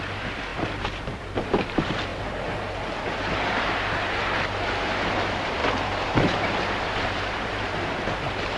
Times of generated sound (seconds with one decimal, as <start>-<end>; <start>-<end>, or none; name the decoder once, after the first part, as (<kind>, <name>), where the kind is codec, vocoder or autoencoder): 0.0-8.6 (vocoder, BigVGAN v2)